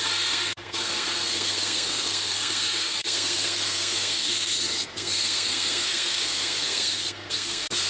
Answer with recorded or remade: remade